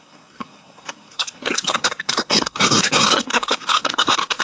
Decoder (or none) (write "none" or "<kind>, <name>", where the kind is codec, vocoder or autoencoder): codec, SNAC